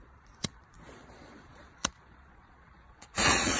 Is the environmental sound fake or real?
fake